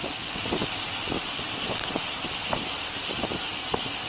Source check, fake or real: real